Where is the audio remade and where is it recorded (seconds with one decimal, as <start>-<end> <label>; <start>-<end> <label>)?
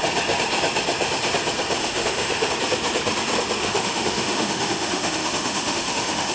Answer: 0.0-1.8 recorded; 1.8-2.5 remade; 2.5-3.6 recorded; 3.6-6.3 remade